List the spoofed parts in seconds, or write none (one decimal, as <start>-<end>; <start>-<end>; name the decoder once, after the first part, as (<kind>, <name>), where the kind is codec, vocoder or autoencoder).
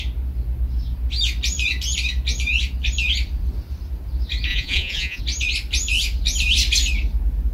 4.5-5.2 (vocoder, Vocos)